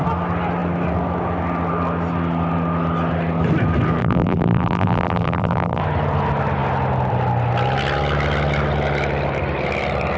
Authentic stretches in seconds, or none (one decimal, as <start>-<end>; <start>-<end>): 0.0-4.0; 5.8-10.2